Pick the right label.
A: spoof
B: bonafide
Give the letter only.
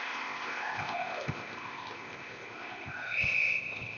A